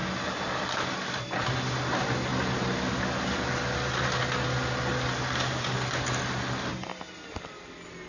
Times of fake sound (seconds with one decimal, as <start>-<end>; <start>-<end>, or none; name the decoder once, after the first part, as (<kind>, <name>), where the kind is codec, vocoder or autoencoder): none